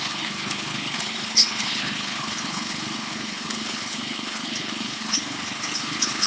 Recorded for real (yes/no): no